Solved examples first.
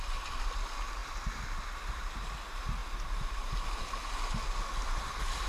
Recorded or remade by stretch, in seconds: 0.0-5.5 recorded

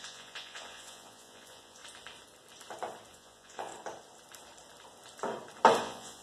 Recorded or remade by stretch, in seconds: 0.0-1.8 remade; 1.8-3.1 recorded; 3.1-3.7 remade; 3.7-5.8 recorded; 5.8-6.2 remade

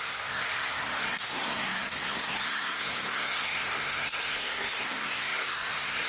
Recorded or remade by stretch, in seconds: 0.0-6.1 remade

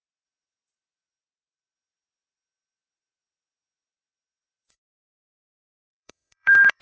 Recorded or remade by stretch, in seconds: 0.0-4.7 recorded; 4.7-6.8 remade

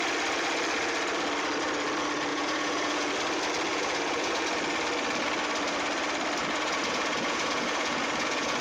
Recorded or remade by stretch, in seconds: 0.0-2.3 recorded; 2.3-3.1 remade; 3.1-3.7 recorded; 3.7-4.5 remade; 4.5-6.4 recorded; 6.4-8.6 remade

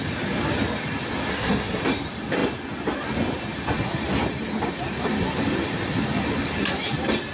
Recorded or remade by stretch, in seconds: 0.0-1.3 recorded; 1.3-1.8 remade; 1.8-7.3 recorded

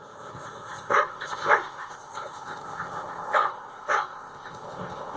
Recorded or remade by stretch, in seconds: 0.0-5.2 remade

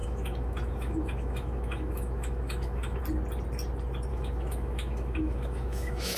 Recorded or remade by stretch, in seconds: 0.0-3.0 remade; 3.0-4.1 recorded; 4.1-6.2 remade